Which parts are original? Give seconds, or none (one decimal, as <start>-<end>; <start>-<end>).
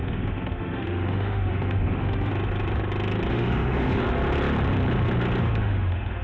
2.3-3.3; 4.0-5.4